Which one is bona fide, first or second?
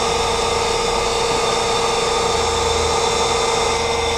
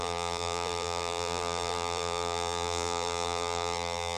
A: first